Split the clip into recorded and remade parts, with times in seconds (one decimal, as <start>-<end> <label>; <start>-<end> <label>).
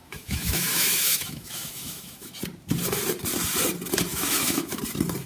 0.0-2.3 remade; 2.3-4.1 recorded; 4.1-4.8 remade; 4.8-5.3 recorded